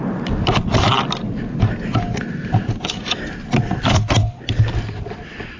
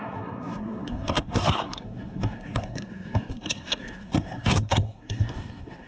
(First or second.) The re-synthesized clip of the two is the second